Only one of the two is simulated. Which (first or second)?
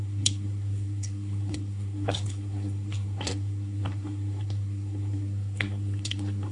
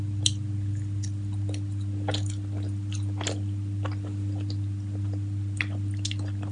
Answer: first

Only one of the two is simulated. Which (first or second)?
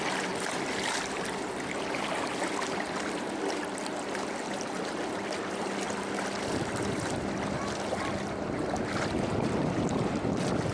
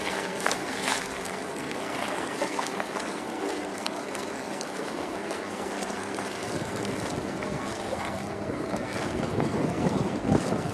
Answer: second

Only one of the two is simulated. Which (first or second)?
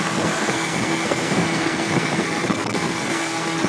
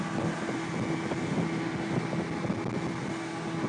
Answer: first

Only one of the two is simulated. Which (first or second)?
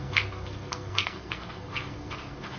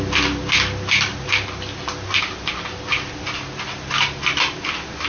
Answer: first